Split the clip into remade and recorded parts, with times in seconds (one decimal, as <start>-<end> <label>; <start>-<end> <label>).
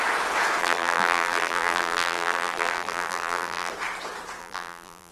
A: 0.0-0.6 recorded; 0.6-3.7 remade; 3.7-4.4 recorded; 4.4-5.1 remade